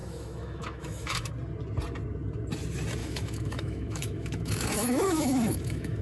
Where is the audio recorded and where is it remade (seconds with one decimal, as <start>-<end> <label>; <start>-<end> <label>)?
0.0-1.3 remade; 1.3-3.0 recorded; 3.0-6.0 remade